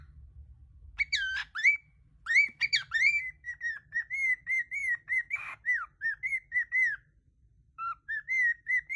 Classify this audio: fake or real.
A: real